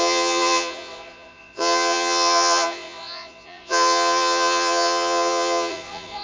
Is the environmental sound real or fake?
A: fake